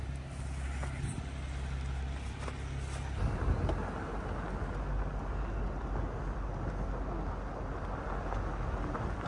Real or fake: real